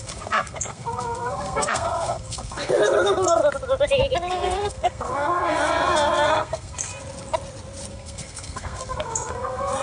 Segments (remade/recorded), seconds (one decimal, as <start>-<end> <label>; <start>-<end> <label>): 0.0-3.4 remade; 3.4-4.3 recorded; 4.3-6.9 remade; 6.9-7.9 recorded; 7.9-9.8 remade